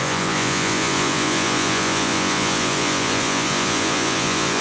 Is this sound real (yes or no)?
no